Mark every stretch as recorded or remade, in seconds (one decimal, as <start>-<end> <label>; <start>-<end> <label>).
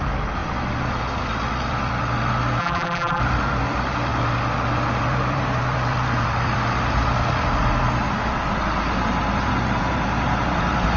0.0-2.6 recorded; 2.6-3.2 remade; 3.2-11.0 recorded